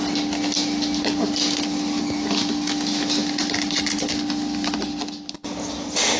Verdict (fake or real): real